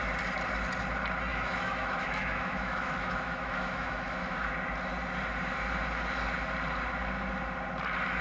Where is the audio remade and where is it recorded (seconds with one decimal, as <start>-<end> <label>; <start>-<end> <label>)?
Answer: 0.0-1.3 recorded; 1.3-4.5 remade; 4.5-8.2 recorded

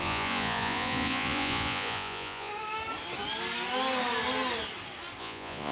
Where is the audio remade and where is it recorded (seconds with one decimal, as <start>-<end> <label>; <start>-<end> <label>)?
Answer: 0.0-2.5 remade; 2.5-5.2 recorded; 5.2-5.7 remade

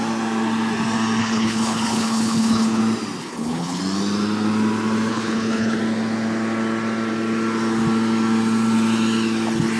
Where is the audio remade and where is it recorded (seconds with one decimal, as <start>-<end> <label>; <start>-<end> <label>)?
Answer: 0.0-1.2 recorded; 1.2-2.8 remade; 2.8-3.2 recorded; 3.2-3.8 remade; 3.8-5.1 recorded; 5.1-5.8 remade; 5.8-9.8 recorded

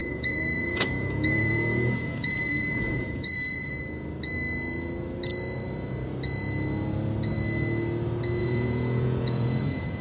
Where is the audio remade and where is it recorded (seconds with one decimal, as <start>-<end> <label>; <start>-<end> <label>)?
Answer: 0.0-3.8 remade; 3.8-8.4 recorded; 8.4-10.0 remade

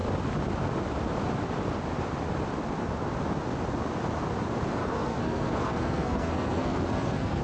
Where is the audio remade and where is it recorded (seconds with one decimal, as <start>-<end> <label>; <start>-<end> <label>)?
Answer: 0.0-4.8 recorded; 4.8-7.4 remade

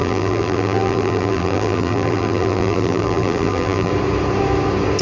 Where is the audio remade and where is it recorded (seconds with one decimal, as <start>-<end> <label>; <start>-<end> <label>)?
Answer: 0.0-3.9 remade; 3.9-5.0 recorded

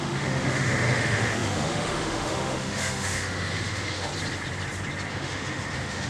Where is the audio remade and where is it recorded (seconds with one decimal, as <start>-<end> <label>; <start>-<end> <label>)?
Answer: 0.0-4.1 remade; 4.1-5.1 recorded; 5.1-6.1 remade

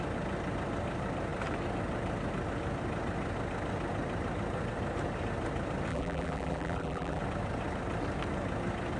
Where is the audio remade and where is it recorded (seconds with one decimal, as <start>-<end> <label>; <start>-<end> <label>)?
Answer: 0.0-5.9 recorded; 5.9-7.2 remade; 7.2-9.0 recorded